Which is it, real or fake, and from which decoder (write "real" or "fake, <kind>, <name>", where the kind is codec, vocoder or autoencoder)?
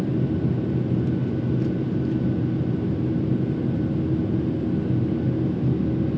real